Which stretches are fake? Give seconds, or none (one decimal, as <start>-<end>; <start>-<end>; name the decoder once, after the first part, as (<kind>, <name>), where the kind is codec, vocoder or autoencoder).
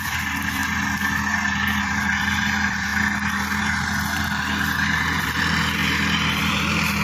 0.0-0.6 (vocoder, BigVGAN v2); 1.8-2.9; 5.2-5.8; 6.4-7.0